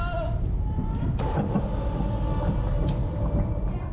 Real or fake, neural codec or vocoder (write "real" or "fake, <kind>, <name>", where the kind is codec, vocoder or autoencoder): real